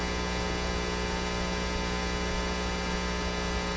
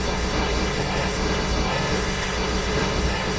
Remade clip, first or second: second